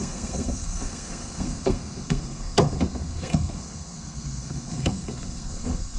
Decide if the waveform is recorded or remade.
remade